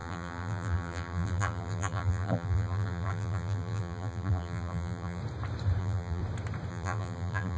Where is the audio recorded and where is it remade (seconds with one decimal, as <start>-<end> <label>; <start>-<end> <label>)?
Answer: 0.0-5.2 remade; 5.2-5.8 recorded; 5.8-6.2 remade; 6.2-6.7 recorded; 6.7-7.6 remade